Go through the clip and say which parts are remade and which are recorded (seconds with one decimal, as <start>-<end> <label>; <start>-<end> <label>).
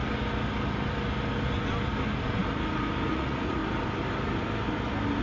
0.0-3.1 recorded; 3.1-3.6 remade; 3.6-5.2 recorded